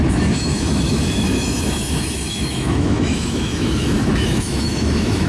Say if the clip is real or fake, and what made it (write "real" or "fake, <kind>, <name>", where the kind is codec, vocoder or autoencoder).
fake, autoencoder, DAC-VAE